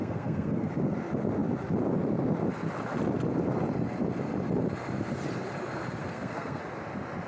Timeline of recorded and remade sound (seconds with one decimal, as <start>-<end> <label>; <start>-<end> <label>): 0.0-0.7 remade; 0.7-6.0 recorded; 6.0-6.6 remade; 6.6-7.3 recorded